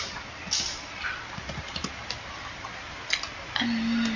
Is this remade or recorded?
recorded